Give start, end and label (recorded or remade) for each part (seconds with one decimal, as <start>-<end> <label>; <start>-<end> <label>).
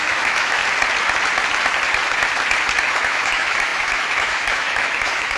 0.0-0.6 remade; 0.6-2.8 recorded; 2.8-5.4 remade